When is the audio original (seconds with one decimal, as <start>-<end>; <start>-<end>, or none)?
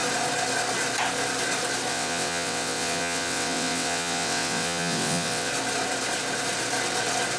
0.0-1.9; 5.5-7.4